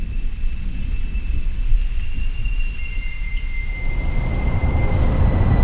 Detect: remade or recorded recorded